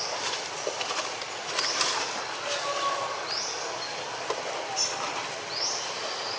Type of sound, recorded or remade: recorded